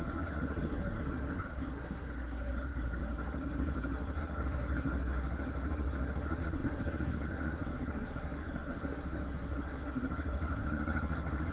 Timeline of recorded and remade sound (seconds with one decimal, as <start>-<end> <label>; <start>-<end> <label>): 0.0-11.5 remade